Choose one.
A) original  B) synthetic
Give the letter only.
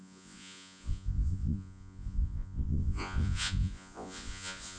B